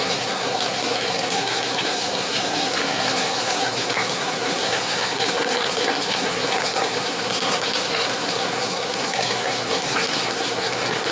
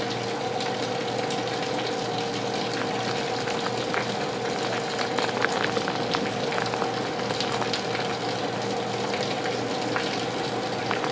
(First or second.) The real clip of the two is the second